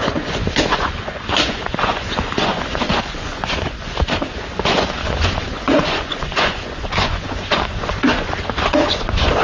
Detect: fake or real fake